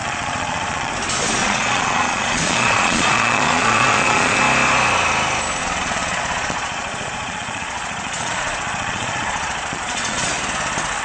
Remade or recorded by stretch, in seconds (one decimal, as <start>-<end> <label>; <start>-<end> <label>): 0.0-0.9 remade; 0.9-1.4 recorded; 1.4-4.4 remade; 4.4-5.6 recorded; 5.6-10.3 remade; 10.3-11.0 recorded